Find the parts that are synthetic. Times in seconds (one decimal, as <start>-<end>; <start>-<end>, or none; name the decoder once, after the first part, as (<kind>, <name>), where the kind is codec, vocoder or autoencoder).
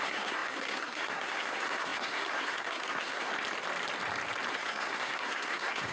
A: 0.0-3.3 (codec, SNAC); 4.5-5.9